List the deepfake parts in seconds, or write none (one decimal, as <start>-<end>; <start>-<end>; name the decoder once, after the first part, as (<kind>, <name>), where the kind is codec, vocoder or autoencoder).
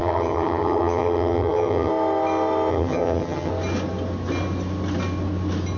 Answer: 0.0-1.9 (vocoder, HiFi-GAN); 2.7-3.5